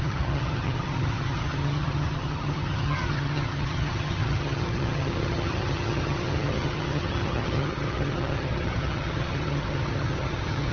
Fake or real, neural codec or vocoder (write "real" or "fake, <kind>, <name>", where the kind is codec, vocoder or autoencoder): fake, vocoder, HiFi-GAN